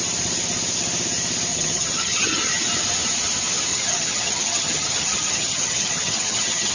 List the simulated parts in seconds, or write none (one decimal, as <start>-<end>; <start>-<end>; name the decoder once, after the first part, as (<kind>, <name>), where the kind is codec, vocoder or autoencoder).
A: 1.5-2.5 (vocoder, HiFi-GAN); 3.7-6.7

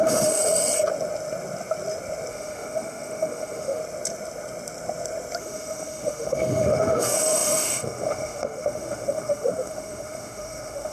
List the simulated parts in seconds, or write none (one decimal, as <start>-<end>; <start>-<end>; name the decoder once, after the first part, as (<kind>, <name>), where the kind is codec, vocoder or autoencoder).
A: 0.0-0.4 (autoencoder, DAC-VAE); 2.3-3.8; 5.4-10.9

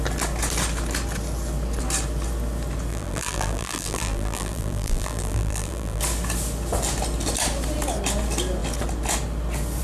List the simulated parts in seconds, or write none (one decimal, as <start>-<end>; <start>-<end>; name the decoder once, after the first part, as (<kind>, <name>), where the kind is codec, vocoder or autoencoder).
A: 2.9-6.0 (vocoder, BigVGAN v2)

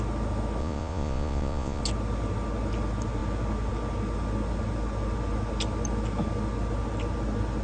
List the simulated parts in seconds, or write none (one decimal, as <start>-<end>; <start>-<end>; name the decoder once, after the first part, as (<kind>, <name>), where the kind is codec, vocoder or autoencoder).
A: 0.6-1.8 (vocoder, Vocos)

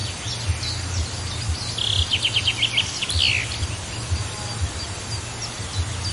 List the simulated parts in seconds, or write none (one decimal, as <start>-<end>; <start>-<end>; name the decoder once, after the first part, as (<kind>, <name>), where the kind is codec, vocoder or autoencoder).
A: none

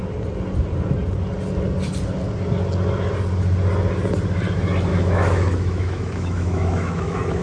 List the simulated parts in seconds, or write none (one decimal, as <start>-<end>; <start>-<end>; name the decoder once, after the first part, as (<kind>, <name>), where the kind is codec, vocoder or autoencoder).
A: 4.9-7.4 (autoencoder, DAC-VAE)